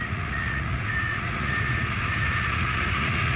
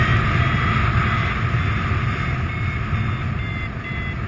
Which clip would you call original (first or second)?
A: second